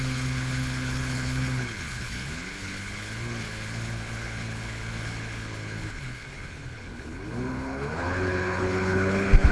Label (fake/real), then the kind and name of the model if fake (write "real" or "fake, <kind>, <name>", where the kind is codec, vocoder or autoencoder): fake, codec, HILCodec